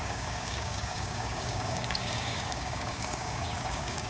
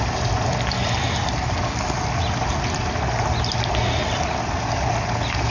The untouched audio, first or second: second